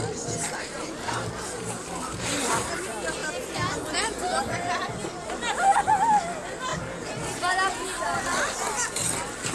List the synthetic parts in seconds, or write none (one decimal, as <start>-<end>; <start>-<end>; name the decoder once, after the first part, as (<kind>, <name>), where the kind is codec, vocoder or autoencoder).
none